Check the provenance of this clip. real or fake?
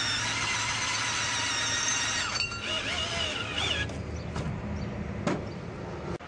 real